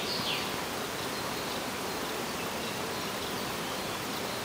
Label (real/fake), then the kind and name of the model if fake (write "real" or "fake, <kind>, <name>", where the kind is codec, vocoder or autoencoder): fake, vocoder, BigVGAN v2